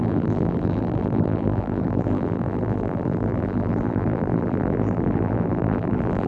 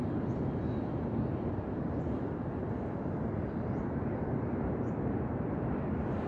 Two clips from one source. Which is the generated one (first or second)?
first